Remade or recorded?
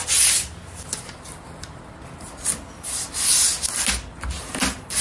recorded